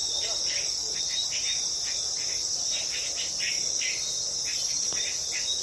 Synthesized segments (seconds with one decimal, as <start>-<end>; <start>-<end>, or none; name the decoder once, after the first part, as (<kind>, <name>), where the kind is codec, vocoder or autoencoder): none